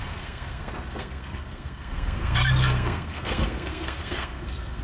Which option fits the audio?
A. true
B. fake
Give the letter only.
B